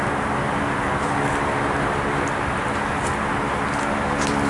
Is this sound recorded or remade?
recorded